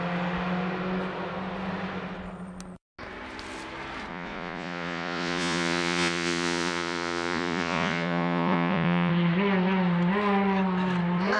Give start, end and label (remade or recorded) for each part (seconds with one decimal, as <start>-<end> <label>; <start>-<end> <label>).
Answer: 0.0-4.1 recorded; 4.1-9.1 remade; 9.1-11.4 recorded